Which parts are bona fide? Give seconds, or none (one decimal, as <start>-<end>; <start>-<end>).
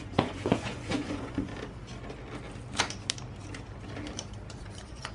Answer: 1.5-4.6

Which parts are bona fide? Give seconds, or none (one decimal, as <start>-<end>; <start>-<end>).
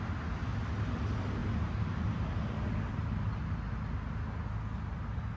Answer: 0.0-5.4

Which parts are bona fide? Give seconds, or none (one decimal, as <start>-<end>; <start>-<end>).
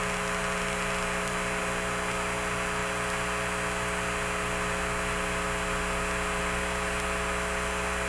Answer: 0.0-8.1